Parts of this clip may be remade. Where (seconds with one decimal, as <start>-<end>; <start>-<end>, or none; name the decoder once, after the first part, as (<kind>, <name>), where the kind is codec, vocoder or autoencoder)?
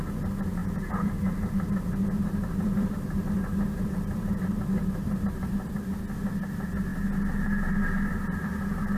0.6-5.2 (vocoder, BigVGAN v2)